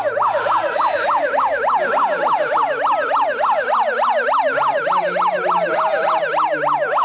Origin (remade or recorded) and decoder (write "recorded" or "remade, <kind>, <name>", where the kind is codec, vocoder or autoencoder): recorded